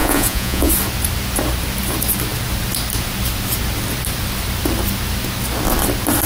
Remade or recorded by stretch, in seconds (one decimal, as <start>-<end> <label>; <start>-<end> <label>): 0.0-0.7 remade; 0.7-6.3 recorded